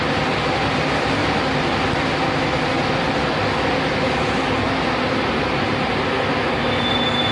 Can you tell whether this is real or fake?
real